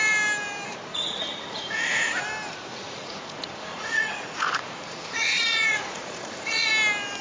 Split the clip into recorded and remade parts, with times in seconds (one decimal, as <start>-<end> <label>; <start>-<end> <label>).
0.0-0.9 recorded; 0.9-2.2 remade; 2.2-2.7 recorded; 2.7-6.7 remade; 6.7-7.2 recorded

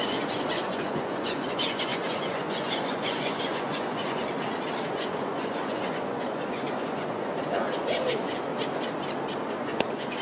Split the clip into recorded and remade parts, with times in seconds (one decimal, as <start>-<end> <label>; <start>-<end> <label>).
0.0-4.2 remade; 4.2-4.8 recorded; 4.8-8.5 remade; 8.5-9.5 recorded; 9.5-10.2 remade

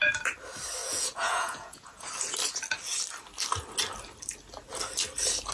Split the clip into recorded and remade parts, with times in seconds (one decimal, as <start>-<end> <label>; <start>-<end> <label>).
0.0-0.8 recorded; 0.8-2.1 remade; 2.1-5.5 recorded

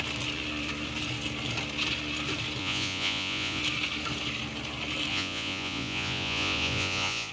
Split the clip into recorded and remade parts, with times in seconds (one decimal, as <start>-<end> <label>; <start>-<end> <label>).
0.0-2.6 recorded; 2.6-3.6 remade; 3.6-5.1 recorded; 5.1-7.3 remade